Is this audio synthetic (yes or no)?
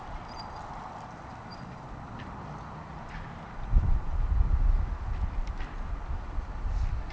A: no